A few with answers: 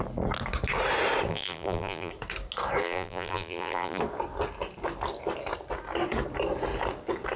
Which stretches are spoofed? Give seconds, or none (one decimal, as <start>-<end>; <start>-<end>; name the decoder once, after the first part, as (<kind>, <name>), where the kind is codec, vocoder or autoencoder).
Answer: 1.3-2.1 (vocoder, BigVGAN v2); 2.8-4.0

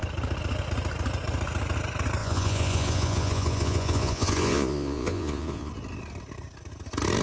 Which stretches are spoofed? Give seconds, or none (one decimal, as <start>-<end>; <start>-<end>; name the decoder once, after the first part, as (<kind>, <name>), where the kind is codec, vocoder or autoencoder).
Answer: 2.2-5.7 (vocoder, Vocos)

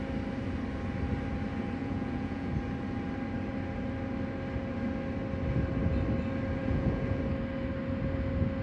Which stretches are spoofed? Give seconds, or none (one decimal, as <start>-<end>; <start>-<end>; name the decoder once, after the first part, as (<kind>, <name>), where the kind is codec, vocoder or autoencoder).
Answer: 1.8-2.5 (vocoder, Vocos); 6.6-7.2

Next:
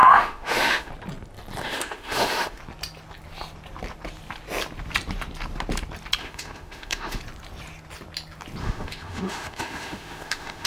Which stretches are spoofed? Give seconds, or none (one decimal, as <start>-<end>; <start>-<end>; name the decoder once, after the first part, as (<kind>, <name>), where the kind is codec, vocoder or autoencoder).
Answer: 0.0-0.9 (autoencoder, DAC-VAE); 1.6-2.6; 6.2-7.2; 8.6-10.7

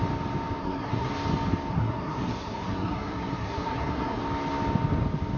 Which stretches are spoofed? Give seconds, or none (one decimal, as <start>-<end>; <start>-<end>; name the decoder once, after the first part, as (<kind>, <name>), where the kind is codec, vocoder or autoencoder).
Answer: 0.6-1.1 (codec, SNAC); 1.7-4.2

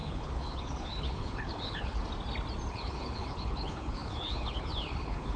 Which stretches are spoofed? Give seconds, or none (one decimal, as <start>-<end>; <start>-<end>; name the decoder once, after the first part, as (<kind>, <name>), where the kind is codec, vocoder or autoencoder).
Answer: 0.0-2.0 (codec, HILCodec); 2.7-5.4

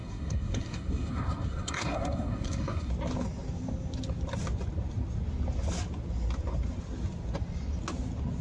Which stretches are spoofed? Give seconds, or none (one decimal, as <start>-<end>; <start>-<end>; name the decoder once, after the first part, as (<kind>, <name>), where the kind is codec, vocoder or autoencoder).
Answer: 0.0-2.9 (codec, SNAC)